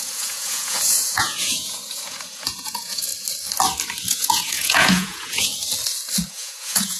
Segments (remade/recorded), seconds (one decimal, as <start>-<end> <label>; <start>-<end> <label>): 0.0-3.1 remade; 3.1-4.1 recorded; 4.1-5.5 remade; 5.5-6.3 recorded; 6.3-7.0 remade